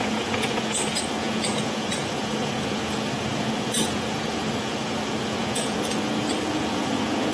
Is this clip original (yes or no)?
no